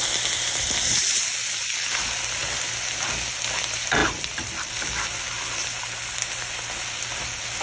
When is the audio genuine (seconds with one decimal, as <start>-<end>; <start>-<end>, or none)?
0.0-4.0; 4.7-7.6